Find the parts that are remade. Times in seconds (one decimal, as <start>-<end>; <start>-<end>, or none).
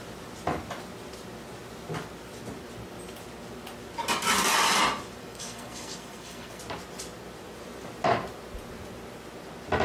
5.2-6.6